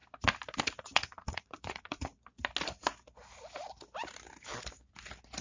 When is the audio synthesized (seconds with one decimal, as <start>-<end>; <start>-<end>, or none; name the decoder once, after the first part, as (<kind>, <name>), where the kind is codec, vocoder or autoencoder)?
0.6-2.1 (vocoder, Vocos)